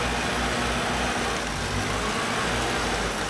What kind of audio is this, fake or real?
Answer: real